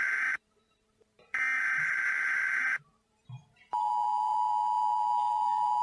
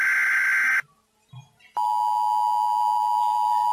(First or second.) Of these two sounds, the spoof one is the first